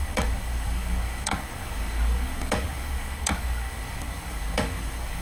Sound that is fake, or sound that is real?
fake